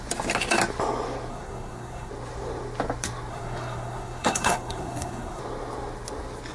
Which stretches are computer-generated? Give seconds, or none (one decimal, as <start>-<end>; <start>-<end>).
1.3-2.1; 3.3-5.4